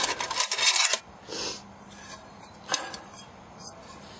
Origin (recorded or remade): recorded